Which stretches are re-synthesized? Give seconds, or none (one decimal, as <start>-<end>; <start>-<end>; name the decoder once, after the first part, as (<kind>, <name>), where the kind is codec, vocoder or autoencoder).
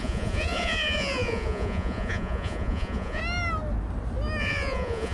0.0-3.2 (vocoder, Vocos); 4.4-5.1